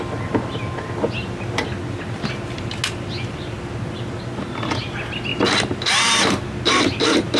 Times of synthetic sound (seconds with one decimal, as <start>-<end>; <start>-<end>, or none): none